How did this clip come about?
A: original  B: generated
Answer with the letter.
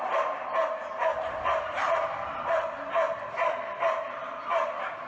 A